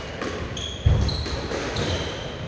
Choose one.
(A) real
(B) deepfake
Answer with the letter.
A